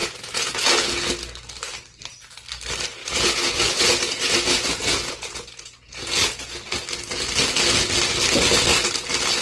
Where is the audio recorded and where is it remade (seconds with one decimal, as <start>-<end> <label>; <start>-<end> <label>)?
0.0-0.7 remade; 0.7-3.0 recorded; 3.0-6.5 remade; 6.5-9.4 recorded

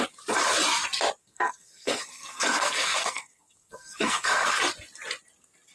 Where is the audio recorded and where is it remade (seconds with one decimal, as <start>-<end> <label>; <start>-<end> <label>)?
0.0-1.2 recorded; 1.2-4.6 remade; 4.6-5.7 recorded

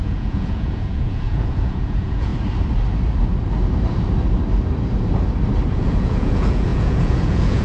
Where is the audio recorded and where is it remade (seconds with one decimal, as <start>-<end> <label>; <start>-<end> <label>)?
0.0-2.3 remade; 2.3-5.7 recorded; 5.7-7.6 remade

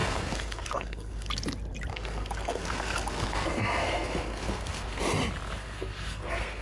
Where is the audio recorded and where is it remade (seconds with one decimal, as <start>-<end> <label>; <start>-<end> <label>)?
0.0-1.3 remade; 1.3-1.9 recorded; 1.9-5.0 remade; 5.0-5.6 recorded; 5.6-6.6 remade

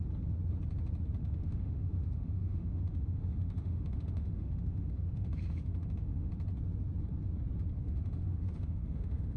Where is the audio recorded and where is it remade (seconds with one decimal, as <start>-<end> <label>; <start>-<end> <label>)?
0.0-1.2 recorded; 1.2-6.3 remade; 6.3-7.8 recorded; 7.8-9.4 remade

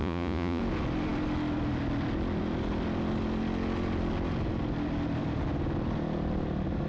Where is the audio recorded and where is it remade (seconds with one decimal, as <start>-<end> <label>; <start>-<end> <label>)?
0.0-0.6 remade; 0.6-6.9 recorded

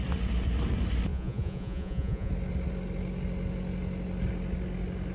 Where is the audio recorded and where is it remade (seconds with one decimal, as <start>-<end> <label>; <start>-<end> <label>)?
0.0-1.1 recorded; 1.1-2.3 remade; 2.3-5.1 recorded